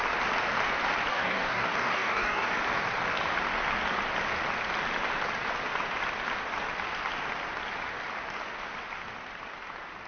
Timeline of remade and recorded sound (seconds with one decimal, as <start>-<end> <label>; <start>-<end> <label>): 0.0-1.1 recorded; 1.1-2.5 remade; 2.5-10.1 recorded

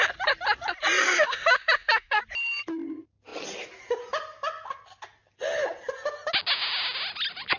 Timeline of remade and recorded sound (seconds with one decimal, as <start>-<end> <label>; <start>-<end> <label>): 0.0-1.0 recorded; 1.0-2.2 remade; 2.2-7.6 recorded

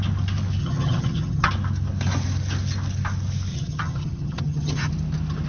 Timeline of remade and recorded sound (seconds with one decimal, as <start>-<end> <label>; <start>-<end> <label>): 0.0-0.6 recorded; 0.6-1.5 remade; 1.5-3.5 recorded; 3.5-4.9 remade; 4.9-5.5 recorded

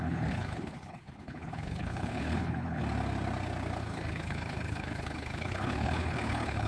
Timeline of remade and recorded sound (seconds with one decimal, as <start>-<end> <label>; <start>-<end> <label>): 0.0-2.8 remade; 2.8-3.8 recorded; 3.8-6.7 remade

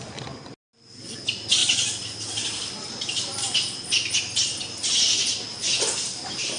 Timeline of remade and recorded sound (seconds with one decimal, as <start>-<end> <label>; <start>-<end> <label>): 0.0-6.6 recorded

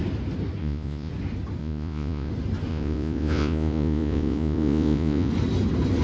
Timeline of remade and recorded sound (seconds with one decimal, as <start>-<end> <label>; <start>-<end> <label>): 0.0-0.6 recorded; 0.6-1.1 remade; 1.1-1.6 recorded; 1.6-2.3 remade; 2.3-2.7 recorded; 2.7-5.3 remade; 5.3-6.0 recorded